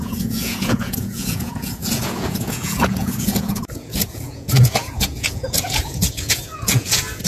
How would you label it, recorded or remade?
remade